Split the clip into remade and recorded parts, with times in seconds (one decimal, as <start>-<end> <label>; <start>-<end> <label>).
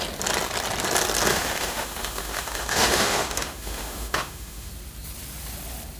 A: 0.0-1.3 recorded; 1.3-4.7 remade; 4.7-6.0 recorded